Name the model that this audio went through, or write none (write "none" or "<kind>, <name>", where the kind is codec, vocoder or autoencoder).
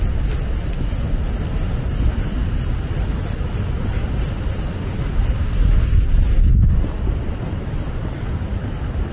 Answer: none